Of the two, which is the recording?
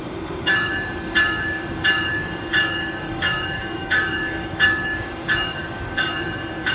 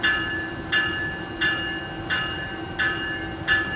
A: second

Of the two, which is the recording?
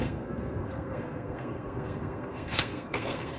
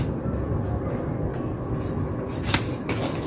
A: second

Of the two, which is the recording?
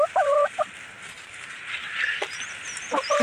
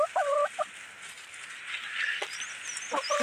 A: second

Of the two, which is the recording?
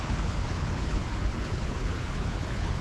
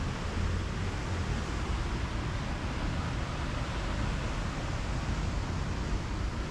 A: second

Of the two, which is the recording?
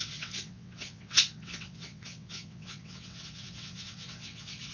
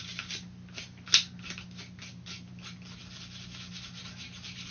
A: second